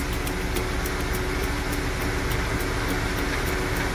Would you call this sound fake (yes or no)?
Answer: no